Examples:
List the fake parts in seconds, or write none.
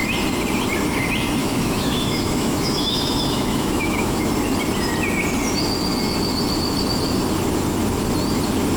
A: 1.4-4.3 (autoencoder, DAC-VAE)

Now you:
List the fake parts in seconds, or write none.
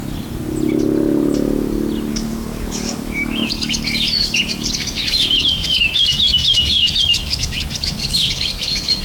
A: 2.1-9.0 (codec, DAC)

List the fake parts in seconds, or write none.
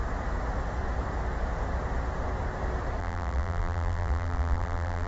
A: 3.0-5.1 (vocoder, BigVGAN v2)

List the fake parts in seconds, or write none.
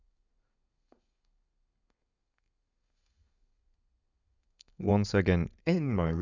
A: 0.0-4.9 (codec, SNAC); 5.6-6.2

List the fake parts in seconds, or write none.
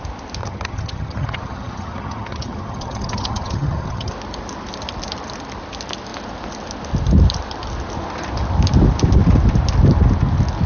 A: 0.4-4.1 (vocoder, HiFi-GAN)